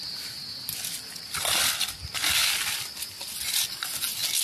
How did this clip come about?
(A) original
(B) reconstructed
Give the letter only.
A